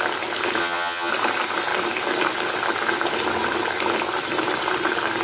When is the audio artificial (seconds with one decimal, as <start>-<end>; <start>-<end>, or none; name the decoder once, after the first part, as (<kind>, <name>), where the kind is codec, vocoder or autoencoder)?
0.6-1.1 (vocoder, HiFi-GAN)